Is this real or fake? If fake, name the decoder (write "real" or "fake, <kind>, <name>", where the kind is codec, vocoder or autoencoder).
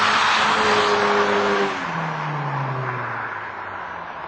real